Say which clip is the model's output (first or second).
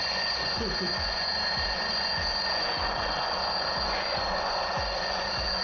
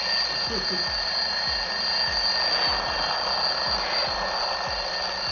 first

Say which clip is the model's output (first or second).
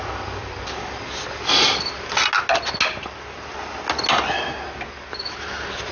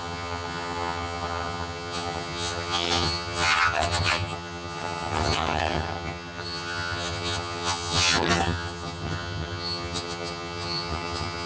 second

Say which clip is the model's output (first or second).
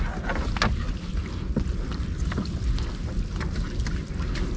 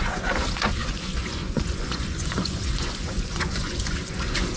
second